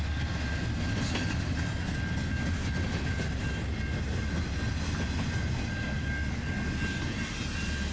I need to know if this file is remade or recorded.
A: recorded